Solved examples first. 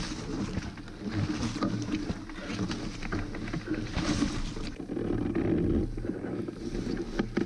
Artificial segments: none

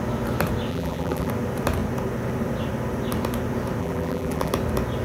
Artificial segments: 0.7-1.3 (vocoder, BigVGAN v2); 3.8-4.5

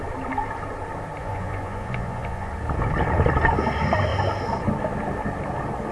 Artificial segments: 1.2-2.5 (vocoder, Vocos)

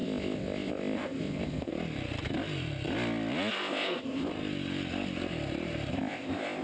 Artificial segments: 0.0-1.7 (codec, ZipCodec); 3.5-4.3; 5.9-6.6

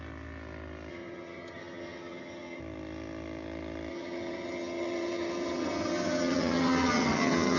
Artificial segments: 0.9-2.6 (vocoder, HiFi-GAN); 3.9-7.6